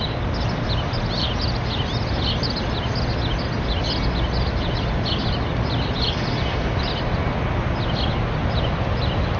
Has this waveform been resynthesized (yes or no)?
no